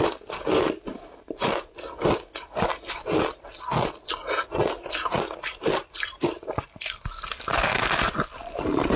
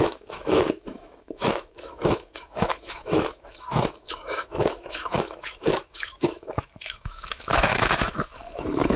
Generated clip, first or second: second